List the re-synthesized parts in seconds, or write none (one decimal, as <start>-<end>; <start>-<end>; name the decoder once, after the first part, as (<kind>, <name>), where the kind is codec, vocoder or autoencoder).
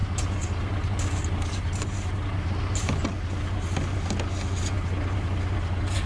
0.0-2.5 (vocoder, BigVGAN v2)